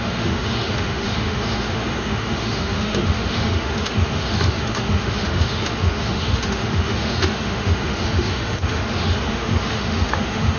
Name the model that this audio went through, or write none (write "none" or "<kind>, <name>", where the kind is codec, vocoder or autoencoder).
autoencoder, DAC-VAE